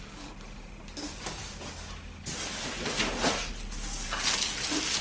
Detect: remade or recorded recorded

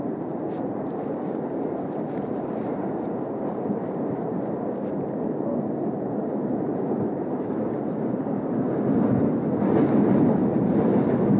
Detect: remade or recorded recorded